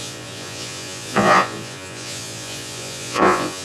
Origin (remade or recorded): remade